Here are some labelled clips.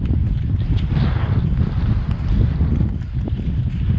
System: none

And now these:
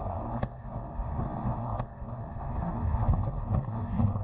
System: codec, SNAC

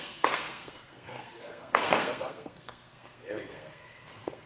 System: codec, SNAC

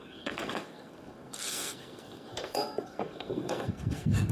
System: codec, SNAC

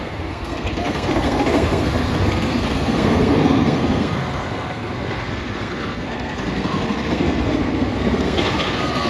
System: codec, SNAC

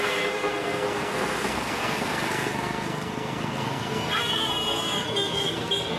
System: codec, SNAC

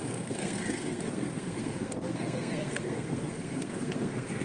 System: codec, SNAC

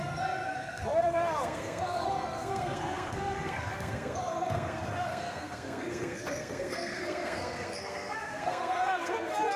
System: codec, SNAC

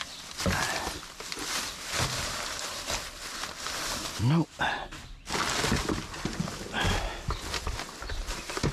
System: none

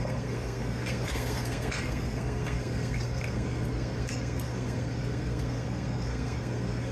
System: codec, SNAC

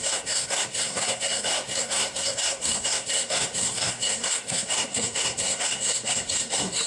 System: codec, SNAC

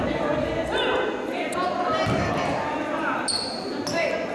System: none